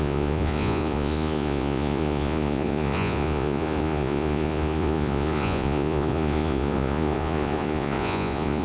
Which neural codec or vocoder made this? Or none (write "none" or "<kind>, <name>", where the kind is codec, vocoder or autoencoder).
vocoder, Vocos